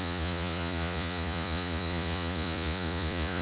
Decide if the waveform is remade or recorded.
remade